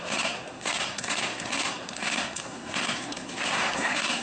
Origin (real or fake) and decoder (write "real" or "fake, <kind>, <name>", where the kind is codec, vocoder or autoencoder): fake, codec, SNAC